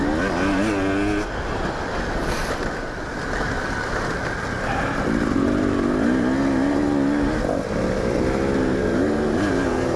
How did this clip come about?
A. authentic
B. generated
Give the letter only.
A